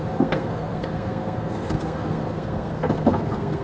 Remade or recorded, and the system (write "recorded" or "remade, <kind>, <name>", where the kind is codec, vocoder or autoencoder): remade, codec, SNAC